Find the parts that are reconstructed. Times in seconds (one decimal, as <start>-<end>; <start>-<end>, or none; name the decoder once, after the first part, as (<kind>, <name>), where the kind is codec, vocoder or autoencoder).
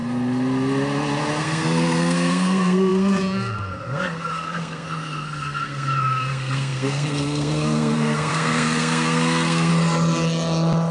1.4-9.7 (codec, SNAC)